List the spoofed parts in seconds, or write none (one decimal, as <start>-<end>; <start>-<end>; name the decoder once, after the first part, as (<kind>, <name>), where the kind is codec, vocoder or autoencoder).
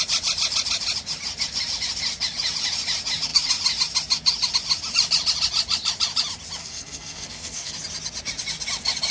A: 6.6-7.7 (codec, SNAC)